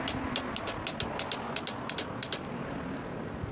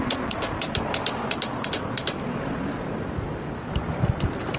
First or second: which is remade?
second